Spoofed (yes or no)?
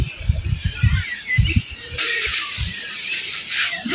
yes